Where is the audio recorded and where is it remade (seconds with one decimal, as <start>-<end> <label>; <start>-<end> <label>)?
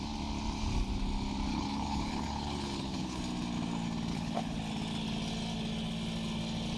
0.0-1.5 recorded; 1.5-3.2 remade; 3.2-4.1 recorded; 4.1-4.6 remade; 4.6-6.8 recorded